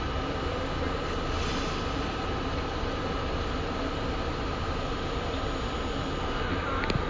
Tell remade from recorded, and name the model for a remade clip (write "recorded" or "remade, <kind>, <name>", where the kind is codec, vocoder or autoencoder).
recorded